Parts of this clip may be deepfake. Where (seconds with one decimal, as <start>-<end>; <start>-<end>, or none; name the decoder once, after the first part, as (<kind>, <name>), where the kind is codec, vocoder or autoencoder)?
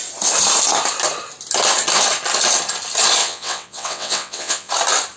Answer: 3.2-4.7 (vocoder, WaveNeXt)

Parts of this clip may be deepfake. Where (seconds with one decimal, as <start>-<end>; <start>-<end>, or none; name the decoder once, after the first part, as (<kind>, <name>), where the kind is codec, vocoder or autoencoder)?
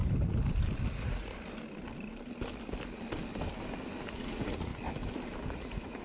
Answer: 0.9-1.3 (vocoder, Vocos); 4.1-4.7; 5.5-6.0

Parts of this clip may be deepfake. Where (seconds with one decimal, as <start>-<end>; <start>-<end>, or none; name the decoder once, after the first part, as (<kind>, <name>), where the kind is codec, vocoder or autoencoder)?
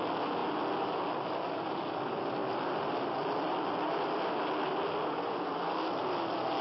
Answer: none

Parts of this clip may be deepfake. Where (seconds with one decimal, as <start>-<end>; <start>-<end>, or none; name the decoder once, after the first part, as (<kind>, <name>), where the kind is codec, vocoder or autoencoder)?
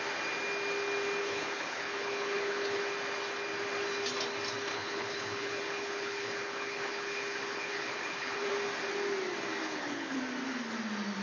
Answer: 1.2-2.8 (codec, HILCodec); 4.7-8.5; 9.6-10.2